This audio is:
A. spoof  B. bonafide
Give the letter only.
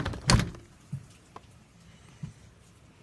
B